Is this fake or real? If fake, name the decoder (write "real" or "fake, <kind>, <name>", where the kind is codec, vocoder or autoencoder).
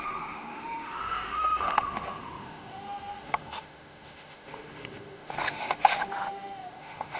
fake, autoencoder, DAC-VAE